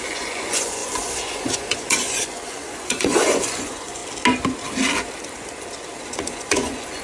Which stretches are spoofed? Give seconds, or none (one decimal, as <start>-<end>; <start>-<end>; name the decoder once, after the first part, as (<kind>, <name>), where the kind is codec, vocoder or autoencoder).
0.0-4.0 (vocoder, Vocos); 6.0-7.0